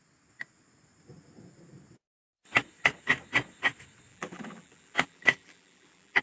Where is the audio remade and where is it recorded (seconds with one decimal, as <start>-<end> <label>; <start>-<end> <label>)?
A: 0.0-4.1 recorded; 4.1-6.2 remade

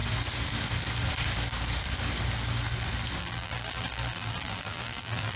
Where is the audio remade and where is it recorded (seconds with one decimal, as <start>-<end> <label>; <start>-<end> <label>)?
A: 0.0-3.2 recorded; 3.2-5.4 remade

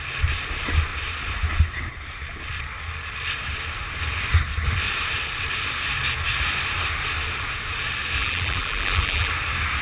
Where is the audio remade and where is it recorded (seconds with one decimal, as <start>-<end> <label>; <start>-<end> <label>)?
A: 0.0-8.2 recorded; 8.2-9.3 remade; 9.3-9.8 recorded

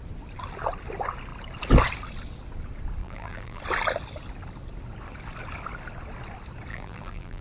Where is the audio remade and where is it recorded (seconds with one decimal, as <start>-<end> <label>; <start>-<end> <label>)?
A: 0.0-3.0 recorded; 3.0-3.6 remade; 3.6-6.7 recorded; 6.7-7.4 remade

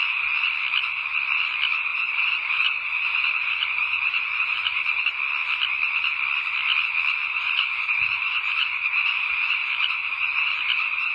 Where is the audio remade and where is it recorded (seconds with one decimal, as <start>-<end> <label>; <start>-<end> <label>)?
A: 0.0-1.9 recorded; 1.9-5.0 remade; 5.0-7.2 recorded; 7.2-11.1 remade